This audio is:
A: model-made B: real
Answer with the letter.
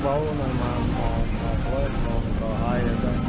B